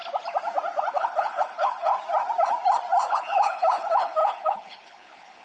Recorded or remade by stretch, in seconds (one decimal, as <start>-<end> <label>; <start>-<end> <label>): 0.0-0.9 recorded; 0.9-1.9 remade; 1.9-3.1 recorded; 3.1-5.4 remade